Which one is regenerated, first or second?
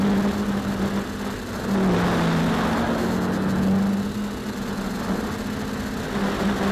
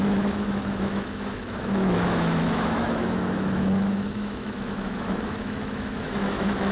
second